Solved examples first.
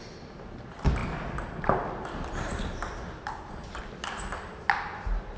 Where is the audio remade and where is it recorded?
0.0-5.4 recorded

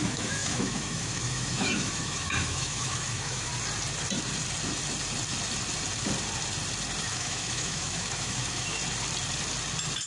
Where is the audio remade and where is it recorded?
0.0-3.5 remade; 3.5-7.1 recorded; 7.1-8.8 remade; 8.8-10.1 recorded

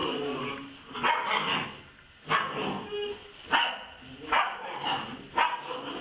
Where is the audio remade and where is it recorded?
0.0-6.0 recorded

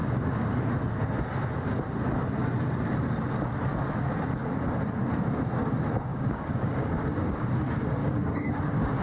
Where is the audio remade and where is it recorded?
0.0-6.1 recorded; 6.1-7.5 remade; 7.5-8.0 recorded; 8.0-8.6 remade; 8.6-9.0 recorded

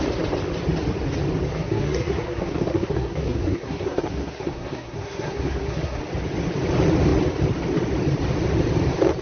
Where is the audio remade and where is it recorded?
0.0-1.5 recorded; 1.5-6.0 remade; 6.0-9.2 recorded

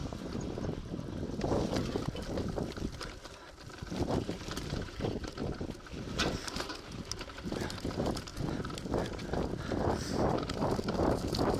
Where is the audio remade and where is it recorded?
0.0-3.9 recorded; 3.9-5.4 remade; 5.4-6.4 recorded; 6.4-8.3 remade; 8.3-9.9 recorded; 9.9-11.6 remade

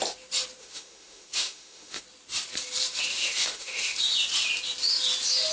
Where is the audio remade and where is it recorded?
0.0-0.6 recorded; 0.6-2.0 remade; 2.0-3.1 recorded; 3.1-4.0 remade; 4.0-5.5 recorded